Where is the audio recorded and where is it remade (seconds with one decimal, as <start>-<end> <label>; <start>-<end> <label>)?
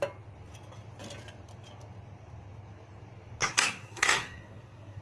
0.0-3.4 recorded; 3.4-5.0 remade